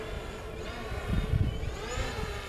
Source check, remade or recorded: recorded